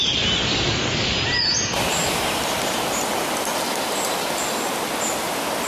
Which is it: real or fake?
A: real